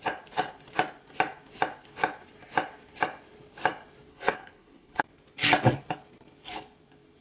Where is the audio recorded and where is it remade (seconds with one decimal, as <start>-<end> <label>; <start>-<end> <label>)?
0.0-4.1 recorded; 4.1-5.0 remade; 5.0-7.2 recorded

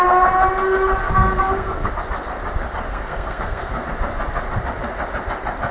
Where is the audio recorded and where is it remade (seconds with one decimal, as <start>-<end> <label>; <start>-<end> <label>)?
0.0-1.0 recorded; 1.0-1.9 remade; 1.9-2.9 recorded; 2.9-3.8 remade; 3.8-5.7 recorded